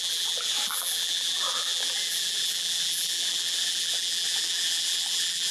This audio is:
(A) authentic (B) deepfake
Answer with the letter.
B